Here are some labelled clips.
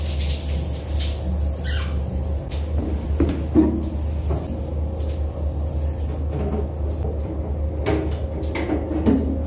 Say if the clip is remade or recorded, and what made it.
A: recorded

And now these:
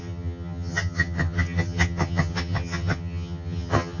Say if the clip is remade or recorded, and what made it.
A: remade, vocoder, HiFi-GAN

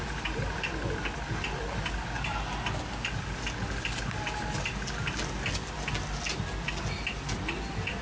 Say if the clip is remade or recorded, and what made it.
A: recorded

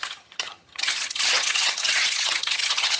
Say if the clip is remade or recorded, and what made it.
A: remade, vocoder, HiFi-GAN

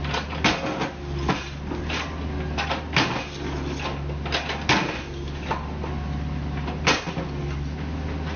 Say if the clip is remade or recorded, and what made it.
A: recorded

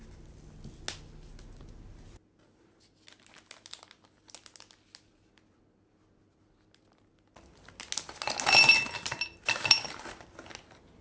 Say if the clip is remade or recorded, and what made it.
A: recorded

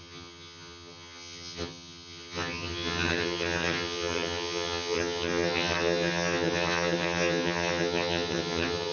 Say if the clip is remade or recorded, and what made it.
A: remade, vocoder, HiFi-GAN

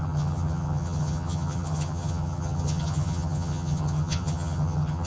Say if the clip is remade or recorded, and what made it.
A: remade, vocoder, HiFi-GAN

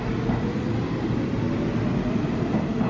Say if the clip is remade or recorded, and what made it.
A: recorded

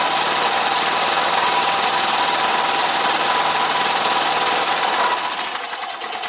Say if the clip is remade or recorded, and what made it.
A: recorded